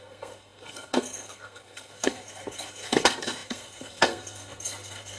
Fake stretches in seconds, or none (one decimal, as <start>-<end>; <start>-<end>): 0.0-5.2